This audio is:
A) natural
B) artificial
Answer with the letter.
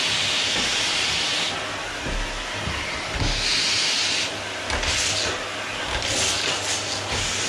A